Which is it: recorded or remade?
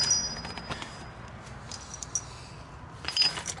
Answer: recorded